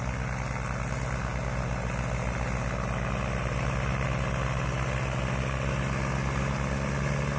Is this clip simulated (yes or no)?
no